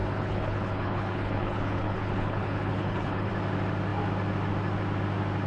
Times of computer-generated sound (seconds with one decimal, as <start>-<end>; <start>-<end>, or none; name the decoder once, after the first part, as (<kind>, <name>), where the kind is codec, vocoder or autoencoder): 0.0-3.3 (codec, HILCodec)

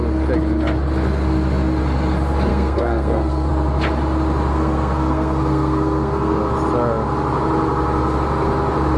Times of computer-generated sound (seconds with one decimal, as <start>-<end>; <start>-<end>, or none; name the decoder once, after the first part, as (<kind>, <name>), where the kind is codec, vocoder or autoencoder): 2.5-3.5 (codec, SNAC); 4.5-6.3

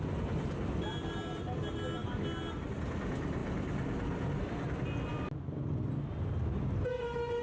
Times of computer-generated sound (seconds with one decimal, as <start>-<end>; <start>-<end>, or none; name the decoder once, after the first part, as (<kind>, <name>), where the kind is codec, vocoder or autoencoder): none

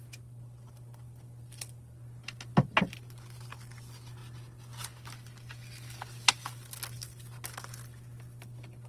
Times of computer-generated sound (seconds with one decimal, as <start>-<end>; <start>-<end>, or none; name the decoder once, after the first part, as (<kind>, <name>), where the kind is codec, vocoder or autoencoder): none

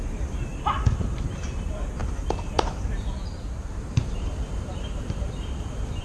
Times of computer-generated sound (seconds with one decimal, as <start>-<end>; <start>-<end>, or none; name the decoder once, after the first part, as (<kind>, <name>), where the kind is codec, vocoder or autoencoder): 0.0-0.5 (vocoder, BigVGAN v2); 1.0-6.0

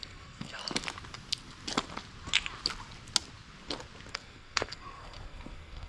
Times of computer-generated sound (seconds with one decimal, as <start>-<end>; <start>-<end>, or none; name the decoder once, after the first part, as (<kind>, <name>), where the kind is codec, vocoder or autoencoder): 0.0-0.6 (codec, SNAC); 4.1-5.9

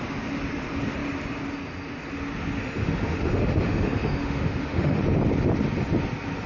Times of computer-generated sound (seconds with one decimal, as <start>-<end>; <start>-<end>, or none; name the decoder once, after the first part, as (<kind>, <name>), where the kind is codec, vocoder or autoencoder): 2.6-5.0 (autoencoder, DAC-VAE)